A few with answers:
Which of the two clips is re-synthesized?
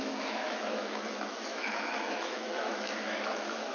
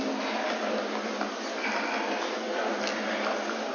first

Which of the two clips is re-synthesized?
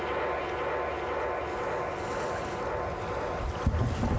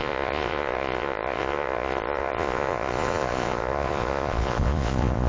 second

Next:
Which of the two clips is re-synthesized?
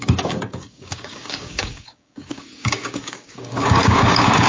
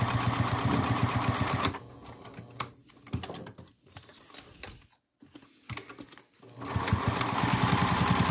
first